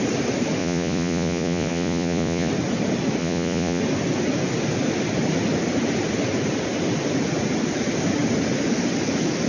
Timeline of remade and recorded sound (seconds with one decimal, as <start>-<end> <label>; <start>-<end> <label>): 0.0-0.6 recorded; 0.6-2.5 remade; 2.5-3.2 recorded; 3.2-3.8 remade; 3.8-9.5 recorded